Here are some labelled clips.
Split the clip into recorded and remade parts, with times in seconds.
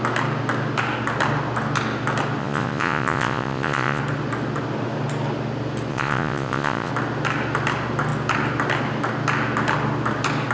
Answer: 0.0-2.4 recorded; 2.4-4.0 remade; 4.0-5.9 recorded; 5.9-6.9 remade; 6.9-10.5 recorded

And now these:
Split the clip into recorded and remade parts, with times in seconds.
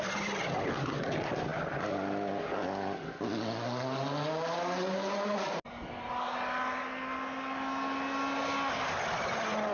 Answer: 0.0-9.7 recorded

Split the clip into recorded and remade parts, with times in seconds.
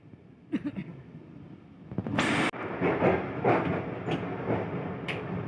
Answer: 0.0-5.5 recorded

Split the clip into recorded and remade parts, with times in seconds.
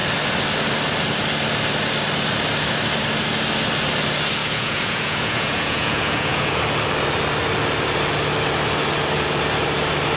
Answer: 0.0-4.4 recorded; 4.4-6.6 remade; 6.6-10.2 recorded